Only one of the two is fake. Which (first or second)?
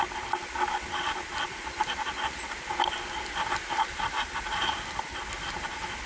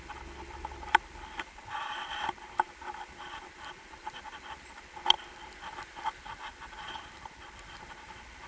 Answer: second